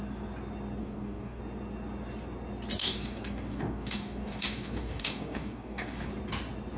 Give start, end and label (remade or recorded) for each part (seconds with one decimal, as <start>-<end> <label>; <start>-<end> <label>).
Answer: 0.0-0.8 recorded; 0.8-1.4 remade; 1.4-2.8 recorded; 2.8-6.1 remade; 6.1-6.8 recorded